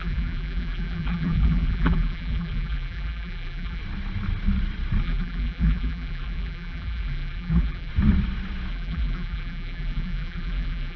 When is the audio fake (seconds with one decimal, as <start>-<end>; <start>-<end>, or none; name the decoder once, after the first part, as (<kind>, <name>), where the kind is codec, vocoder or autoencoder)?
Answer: 0.0-3.8 (vocoder, BigVGAN v2); 5.0-7.9; 8.7-11.0

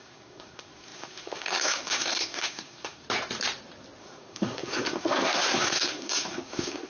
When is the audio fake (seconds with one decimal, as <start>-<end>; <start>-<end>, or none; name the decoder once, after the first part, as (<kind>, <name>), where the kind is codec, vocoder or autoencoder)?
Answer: 0.0-3.0 (codec, SNAC); 4.0-6.9